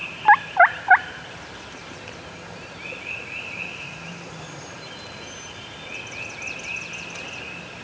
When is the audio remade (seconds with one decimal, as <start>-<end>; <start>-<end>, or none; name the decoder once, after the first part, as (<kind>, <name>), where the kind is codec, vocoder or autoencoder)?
none